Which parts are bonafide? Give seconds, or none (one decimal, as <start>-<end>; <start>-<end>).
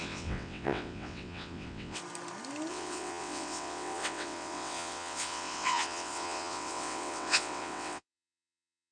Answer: 2.0-2.7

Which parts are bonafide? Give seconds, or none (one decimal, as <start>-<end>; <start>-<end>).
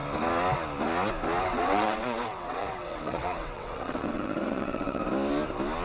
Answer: 0.0-1.5; 5.0-5.8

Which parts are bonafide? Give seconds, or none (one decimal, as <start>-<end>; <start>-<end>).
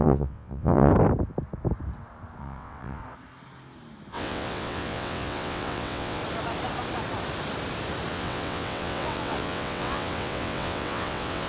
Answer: 0.9-2.4; 3.0-4.1; 6.2-8.1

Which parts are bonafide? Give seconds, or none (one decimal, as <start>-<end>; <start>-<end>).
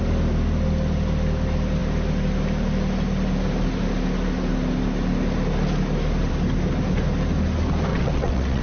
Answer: 0.0-7.9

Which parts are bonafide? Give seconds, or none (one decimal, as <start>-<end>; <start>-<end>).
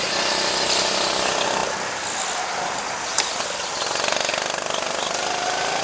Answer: 0.0-5.8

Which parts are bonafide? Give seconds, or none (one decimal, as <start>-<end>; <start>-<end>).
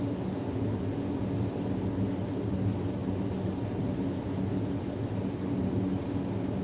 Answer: 0.0-6.6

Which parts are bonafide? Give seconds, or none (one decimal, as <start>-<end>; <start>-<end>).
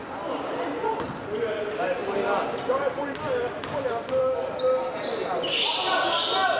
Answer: 0.0-6.6